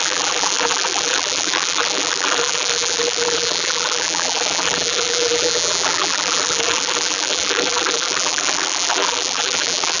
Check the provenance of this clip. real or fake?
fake